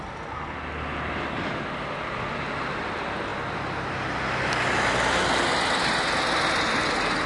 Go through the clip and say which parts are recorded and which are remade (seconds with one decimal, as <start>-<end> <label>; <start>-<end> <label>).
0.0-7.3 recorded